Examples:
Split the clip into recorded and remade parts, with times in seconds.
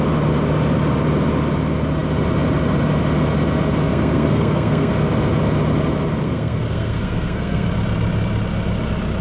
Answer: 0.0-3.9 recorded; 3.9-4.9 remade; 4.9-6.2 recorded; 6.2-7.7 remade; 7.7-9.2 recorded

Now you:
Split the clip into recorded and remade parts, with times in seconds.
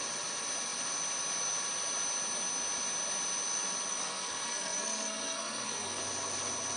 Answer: 0.0-3.9 recorded; 3.9-6.0 remade; 6.0-6.8 recorded